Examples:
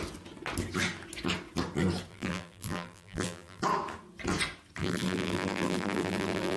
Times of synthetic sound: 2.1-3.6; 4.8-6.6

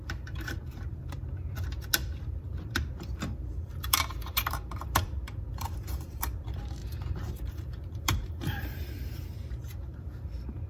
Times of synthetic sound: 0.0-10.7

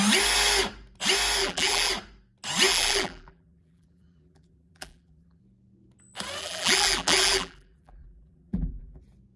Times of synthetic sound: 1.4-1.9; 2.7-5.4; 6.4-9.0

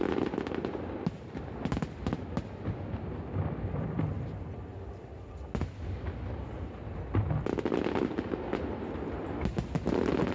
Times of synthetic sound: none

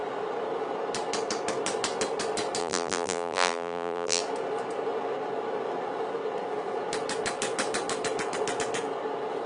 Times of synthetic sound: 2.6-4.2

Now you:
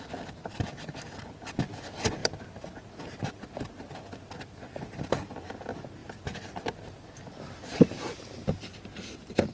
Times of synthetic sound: 0.4-1.0; 2.2-2.9; 6.0-8.2